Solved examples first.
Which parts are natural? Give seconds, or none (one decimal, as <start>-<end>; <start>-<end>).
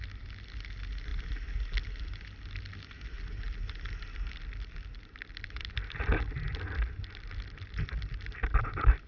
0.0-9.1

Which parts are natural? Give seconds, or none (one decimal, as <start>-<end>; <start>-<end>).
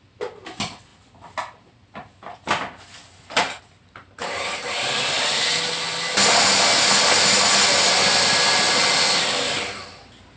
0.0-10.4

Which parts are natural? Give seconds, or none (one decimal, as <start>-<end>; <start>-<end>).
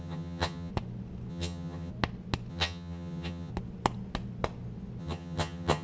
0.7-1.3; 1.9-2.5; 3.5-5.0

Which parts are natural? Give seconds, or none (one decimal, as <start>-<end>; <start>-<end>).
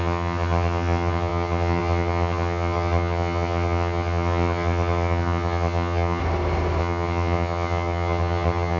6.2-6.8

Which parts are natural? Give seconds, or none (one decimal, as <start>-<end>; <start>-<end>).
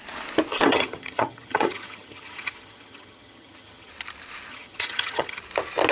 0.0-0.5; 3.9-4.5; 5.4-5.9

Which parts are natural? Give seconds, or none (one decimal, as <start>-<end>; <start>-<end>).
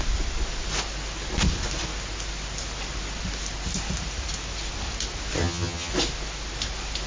0.0-5.4; 5.9-7.1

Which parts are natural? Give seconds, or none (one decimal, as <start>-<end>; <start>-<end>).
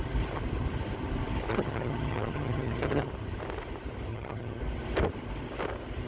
0.0-1.5; 3.1-4.1; 4.6-6.1